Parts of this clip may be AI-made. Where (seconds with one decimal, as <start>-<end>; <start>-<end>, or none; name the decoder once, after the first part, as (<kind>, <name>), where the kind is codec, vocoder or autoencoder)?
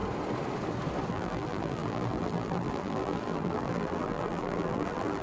1.1-5.2 (vocoder, BigVGAN v2)